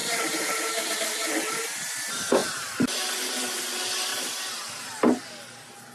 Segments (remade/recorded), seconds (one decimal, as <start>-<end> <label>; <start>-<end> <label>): 0.0-1.0 remade; 1.0-2.4 recorded; 2.4-3.1 remade; 3.1-4.1 recorded; 4.1-5.0 remade; 5.0-5.9 recorded